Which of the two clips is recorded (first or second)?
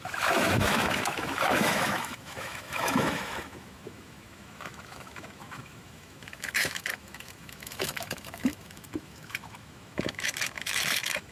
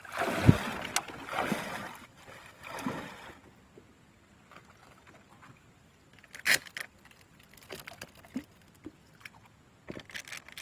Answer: second